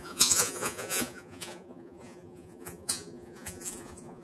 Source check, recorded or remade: remade